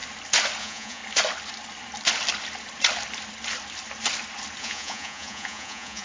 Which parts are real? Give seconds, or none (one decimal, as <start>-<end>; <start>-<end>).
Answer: 0.0-0.6; 1.0-4.6